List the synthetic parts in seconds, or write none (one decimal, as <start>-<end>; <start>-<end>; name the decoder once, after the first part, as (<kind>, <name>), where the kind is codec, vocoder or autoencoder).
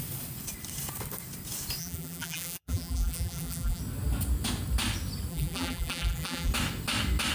1.8-3.8 (vocoder, BigVGAN v2); 5.3-6.5